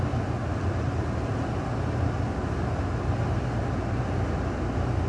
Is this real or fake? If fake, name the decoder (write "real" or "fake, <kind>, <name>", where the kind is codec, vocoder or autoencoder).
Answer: real